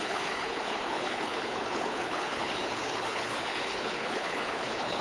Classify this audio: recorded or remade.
remade